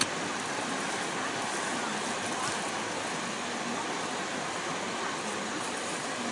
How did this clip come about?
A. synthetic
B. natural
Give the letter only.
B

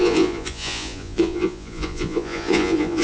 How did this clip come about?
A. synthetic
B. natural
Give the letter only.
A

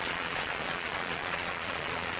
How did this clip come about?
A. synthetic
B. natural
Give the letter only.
A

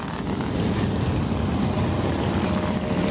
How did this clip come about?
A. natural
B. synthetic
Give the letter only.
A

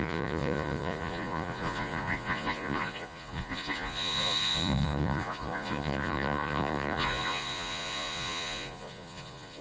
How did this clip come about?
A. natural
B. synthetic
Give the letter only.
B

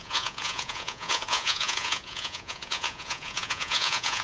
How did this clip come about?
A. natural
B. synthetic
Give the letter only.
B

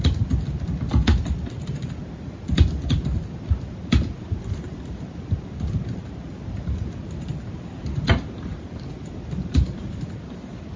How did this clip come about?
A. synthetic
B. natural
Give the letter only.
B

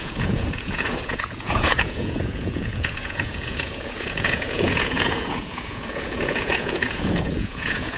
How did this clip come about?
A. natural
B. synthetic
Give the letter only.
B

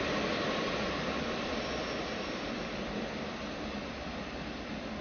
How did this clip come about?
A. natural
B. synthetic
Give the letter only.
A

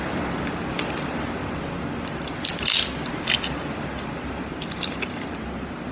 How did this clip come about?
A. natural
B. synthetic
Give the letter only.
A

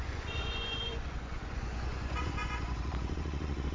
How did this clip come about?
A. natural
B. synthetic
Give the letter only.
B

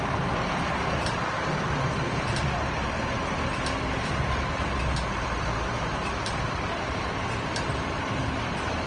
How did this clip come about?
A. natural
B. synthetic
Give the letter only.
A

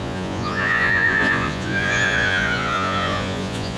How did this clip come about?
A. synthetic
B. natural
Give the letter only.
A